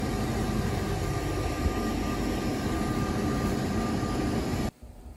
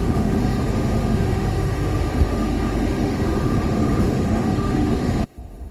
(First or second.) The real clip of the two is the first